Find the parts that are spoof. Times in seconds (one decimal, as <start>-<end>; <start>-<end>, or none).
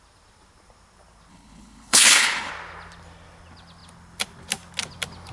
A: 1.3-2.5